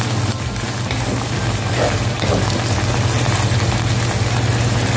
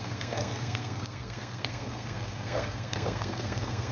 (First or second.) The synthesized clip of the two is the second